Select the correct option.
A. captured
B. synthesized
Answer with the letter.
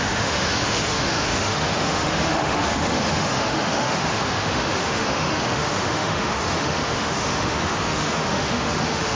B